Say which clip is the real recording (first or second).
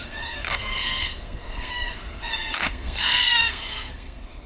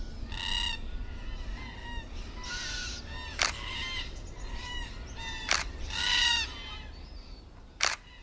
second